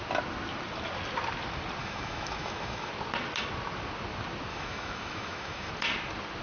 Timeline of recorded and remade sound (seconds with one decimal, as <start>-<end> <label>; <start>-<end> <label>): 0.0-1.8 recorded; 1.8-2.9 remade; 2.9-4.5 recorded; 4.5-5.7 remade; 5.7-6.4 recorded